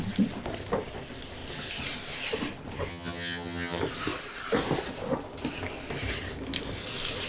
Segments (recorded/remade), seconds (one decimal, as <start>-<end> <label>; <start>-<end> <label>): 0.0-2.9 recorded; 2.9-3.8 remade; 3.8-7.3 recorded